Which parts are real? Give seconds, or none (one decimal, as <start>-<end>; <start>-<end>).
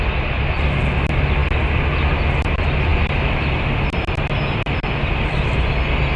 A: 0.0-6.2